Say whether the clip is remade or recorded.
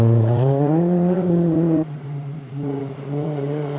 remade